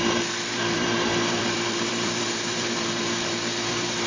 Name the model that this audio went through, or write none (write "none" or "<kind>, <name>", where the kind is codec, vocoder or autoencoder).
vocoder, BigVGAN v2